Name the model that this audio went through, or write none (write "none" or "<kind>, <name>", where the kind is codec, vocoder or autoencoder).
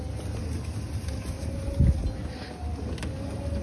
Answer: none